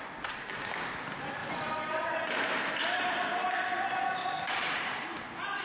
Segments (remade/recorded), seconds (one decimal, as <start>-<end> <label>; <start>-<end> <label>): 0.0-1.4 recorded; 1.4-2.2 remade; 2.2-4.2 recorded; 4.2-5.0 remade; 5.0-5.6 recorded